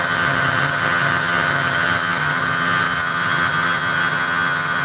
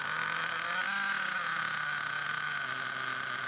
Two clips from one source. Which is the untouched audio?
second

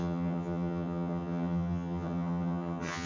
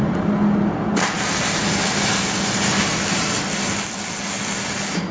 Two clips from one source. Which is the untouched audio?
second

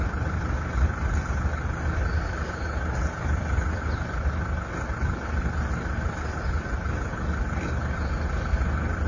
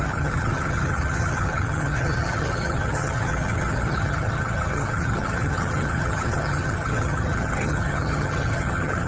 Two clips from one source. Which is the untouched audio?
first